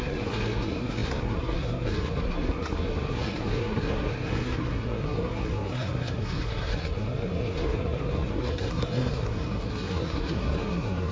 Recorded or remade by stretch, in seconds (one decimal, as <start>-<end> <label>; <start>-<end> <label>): 0.0-11.1 remade